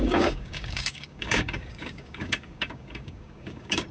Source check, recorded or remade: remade